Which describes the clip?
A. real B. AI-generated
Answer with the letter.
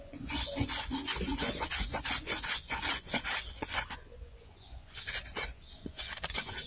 B